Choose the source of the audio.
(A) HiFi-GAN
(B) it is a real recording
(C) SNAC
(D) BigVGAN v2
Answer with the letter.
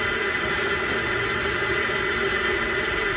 B